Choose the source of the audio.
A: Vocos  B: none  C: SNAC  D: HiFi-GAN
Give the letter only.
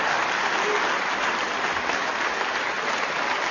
B